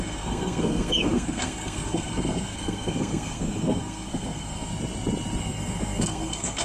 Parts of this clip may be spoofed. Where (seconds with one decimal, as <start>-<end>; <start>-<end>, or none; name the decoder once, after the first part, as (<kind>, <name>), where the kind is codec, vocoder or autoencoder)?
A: 0.0-4.7 (codec, SNAC); 5.4-6.6